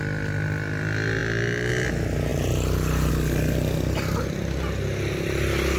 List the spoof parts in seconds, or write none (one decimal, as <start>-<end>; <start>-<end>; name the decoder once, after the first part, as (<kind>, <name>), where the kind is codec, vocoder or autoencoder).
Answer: none